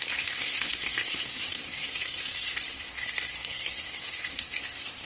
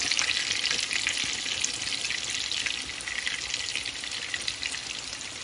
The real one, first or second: second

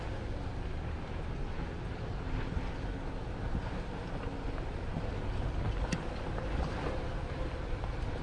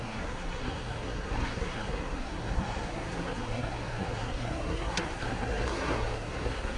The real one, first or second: first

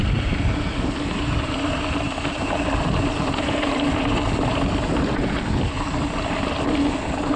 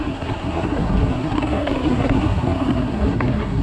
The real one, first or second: first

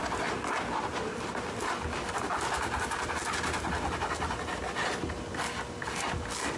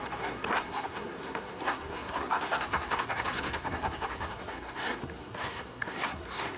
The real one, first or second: first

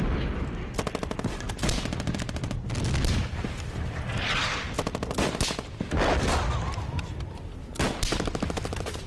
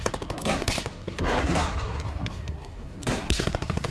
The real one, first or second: first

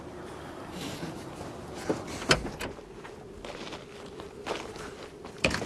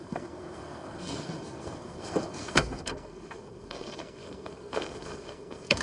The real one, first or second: first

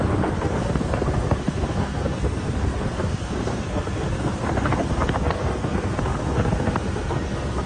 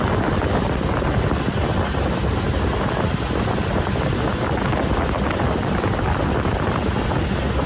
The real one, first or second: second